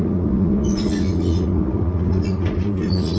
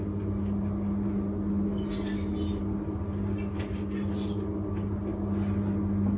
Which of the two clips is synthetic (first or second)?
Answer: first